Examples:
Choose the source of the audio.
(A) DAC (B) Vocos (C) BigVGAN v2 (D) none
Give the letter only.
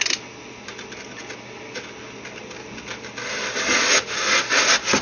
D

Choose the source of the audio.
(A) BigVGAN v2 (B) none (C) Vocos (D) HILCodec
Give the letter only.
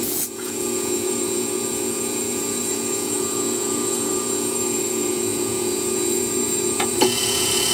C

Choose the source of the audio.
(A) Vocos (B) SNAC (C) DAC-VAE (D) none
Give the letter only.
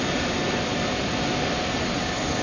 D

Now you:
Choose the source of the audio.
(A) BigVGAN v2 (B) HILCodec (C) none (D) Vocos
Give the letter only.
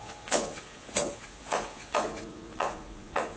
D